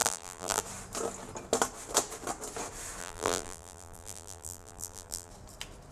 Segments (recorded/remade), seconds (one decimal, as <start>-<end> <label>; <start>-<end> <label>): 0.0-0.6 remade; 0.6-3.0 recorded; 3.0-5.3 remade; 5.3-5.9 recorded